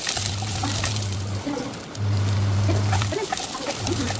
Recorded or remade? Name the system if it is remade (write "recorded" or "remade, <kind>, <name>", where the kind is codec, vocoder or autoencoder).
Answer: recorded